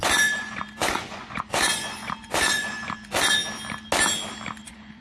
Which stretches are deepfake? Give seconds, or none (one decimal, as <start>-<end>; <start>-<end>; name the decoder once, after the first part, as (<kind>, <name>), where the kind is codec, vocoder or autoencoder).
0.0-3.4 (vocoder, Vocos); 4.6-5.0